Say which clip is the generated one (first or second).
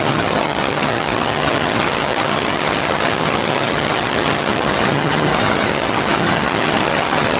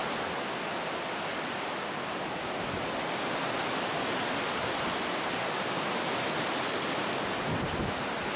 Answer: first